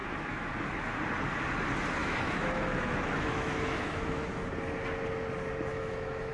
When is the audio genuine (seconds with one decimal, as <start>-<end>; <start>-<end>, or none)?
0.5-2.0; 4.3-5.7